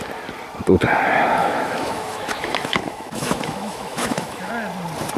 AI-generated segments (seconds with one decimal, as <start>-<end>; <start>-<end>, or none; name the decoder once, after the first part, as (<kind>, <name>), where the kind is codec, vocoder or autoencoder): 1.4-4.5 (autoencoder, DAC-VAE)